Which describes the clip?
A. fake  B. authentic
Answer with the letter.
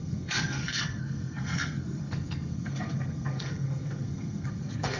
A